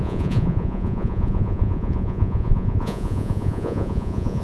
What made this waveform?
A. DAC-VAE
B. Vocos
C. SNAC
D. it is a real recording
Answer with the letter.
B